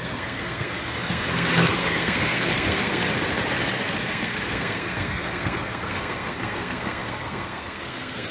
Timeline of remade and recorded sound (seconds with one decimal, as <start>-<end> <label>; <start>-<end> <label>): 0.0-3.0 remade; 3.0-3.8 recorded; 3.8-8.3 remade